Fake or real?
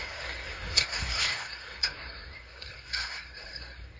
fake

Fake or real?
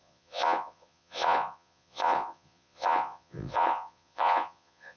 fake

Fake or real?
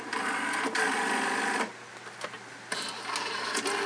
real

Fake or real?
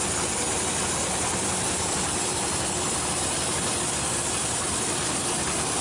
real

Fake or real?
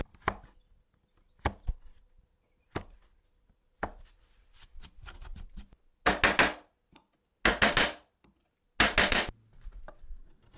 real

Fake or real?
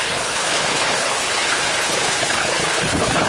fake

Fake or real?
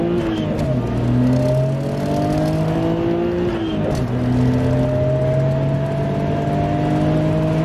real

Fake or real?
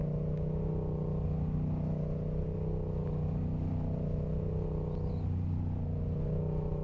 real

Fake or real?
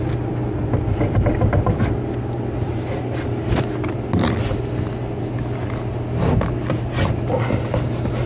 real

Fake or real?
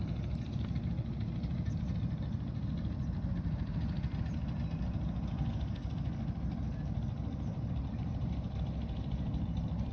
real